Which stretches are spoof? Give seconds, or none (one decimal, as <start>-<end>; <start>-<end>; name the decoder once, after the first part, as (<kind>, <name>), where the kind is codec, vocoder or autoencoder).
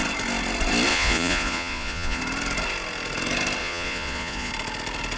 0.9-2.2 (vocoder, Vocos); 3.6-4.5